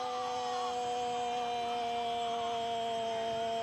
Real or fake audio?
real